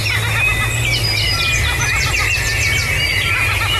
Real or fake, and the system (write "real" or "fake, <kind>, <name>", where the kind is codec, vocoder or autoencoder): real